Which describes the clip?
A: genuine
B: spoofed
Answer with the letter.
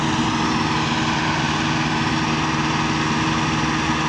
A